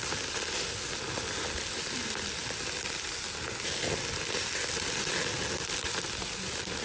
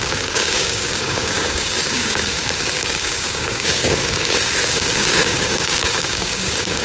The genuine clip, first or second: first